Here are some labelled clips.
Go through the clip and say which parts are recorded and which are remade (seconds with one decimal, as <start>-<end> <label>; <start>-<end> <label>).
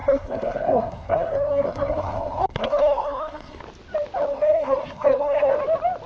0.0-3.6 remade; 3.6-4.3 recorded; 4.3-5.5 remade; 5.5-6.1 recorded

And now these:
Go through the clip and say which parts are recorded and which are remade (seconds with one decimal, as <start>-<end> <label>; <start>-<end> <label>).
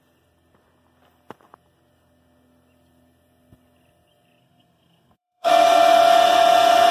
0.0-4.4 recorded; 4.4-5.5 remade; 5.5-6.9 recorded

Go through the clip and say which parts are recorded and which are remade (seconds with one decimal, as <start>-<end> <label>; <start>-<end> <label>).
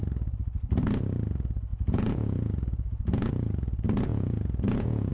0.0-1.7 recorded; 1.7-3.3 remade; 3.3-4.1 recorded; 4.1-5.1 remade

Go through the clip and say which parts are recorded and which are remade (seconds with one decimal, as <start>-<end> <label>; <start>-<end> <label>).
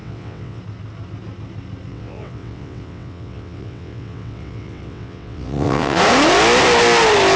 0.0-0.6 remade; 0.6-1.9 recorded; 1.9-6.0 remade; 6.0-7.4 recorded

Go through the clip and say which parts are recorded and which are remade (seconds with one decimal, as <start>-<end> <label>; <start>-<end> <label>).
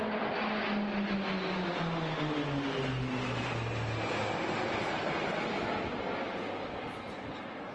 0.0-4.8 recorded; 4.8-5.6 remade; 5.6-7.7 recorded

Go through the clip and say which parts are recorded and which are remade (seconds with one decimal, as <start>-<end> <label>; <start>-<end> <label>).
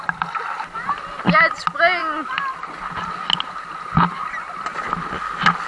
0.0-5.7 recorded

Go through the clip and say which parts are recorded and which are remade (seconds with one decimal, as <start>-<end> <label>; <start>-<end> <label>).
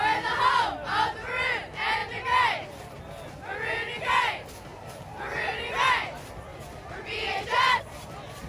0.0-2.0 recorded; 2.0-3.0 remade; 3.0-4.7 recorded; 4.7-6.1 remade; 6.1-6.5 recorded; 6.5-8.5 remade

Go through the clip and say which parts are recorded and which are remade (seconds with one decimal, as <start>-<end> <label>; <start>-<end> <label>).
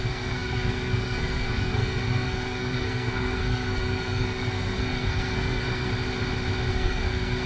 0.0-5.9 remade; 5.9-6.7 recorded; 6.7-7.5 remade